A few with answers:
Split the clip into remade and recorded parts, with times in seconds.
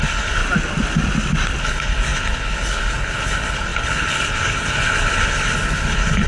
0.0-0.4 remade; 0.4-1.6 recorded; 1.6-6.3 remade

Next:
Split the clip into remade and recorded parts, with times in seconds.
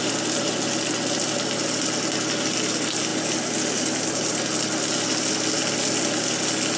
0.0-6.8 recorded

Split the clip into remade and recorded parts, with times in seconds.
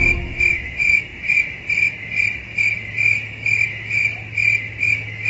0.0-1.1 remade; 1.1-2.9 recorded; 2.9-4.0 remade; 4.0-4.8 recorded; 4.8-5.3 remade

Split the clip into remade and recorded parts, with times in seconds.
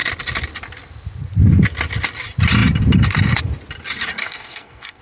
0.0-4.2 recorded; 4.2-5.0 remade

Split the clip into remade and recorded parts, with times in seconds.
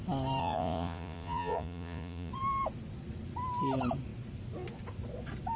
0.0-0.4 recorded; 0.4-2.3 remade; 2.3-5.6 recorded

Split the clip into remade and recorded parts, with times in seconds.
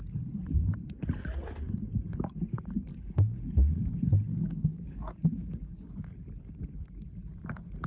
0.0-2.9 recorded; 2.9-3.4 remade; 3.4-4.3 recorded; 4.3-5.9 remade; 5.9-7.9 recorded